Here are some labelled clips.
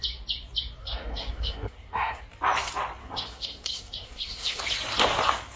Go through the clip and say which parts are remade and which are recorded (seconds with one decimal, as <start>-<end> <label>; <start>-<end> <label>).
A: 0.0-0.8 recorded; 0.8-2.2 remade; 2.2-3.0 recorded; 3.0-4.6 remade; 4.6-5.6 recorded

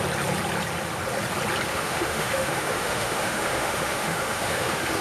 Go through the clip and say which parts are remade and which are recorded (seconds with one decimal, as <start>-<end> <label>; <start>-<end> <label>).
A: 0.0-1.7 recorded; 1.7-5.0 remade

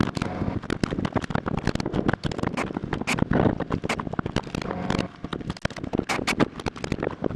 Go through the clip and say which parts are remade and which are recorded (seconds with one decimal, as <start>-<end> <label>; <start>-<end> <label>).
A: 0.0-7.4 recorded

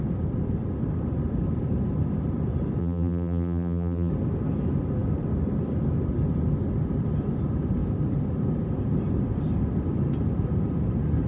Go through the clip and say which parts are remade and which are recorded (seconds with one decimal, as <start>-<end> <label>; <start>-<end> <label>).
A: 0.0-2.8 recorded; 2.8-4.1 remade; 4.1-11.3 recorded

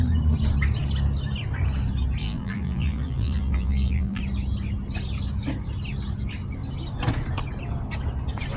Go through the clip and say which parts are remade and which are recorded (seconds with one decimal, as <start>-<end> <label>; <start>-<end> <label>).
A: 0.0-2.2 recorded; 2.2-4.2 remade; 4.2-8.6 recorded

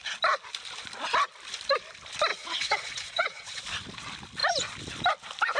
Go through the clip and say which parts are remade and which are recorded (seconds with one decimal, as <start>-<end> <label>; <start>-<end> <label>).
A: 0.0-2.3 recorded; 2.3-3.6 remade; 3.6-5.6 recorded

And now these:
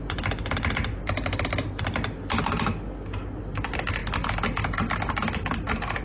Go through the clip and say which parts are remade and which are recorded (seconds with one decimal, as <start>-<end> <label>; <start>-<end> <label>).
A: 0.0-6.0 recorded